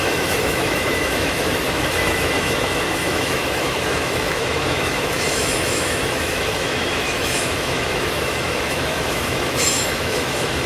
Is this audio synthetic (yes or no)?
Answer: yes